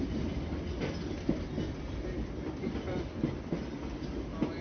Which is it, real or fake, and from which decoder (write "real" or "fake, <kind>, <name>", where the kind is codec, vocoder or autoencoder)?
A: real